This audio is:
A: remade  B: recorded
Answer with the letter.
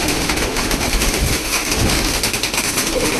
A